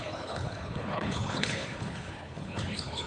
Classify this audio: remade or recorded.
remade